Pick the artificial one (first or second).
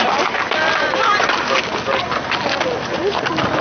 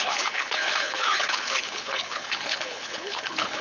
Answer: second